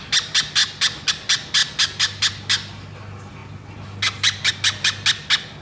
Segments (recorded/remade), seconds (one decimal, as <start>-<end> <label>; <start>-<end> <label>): 0.0-5.6 recorded